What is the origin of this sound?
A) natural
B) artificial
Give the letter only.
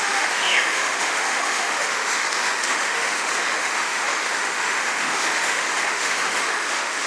B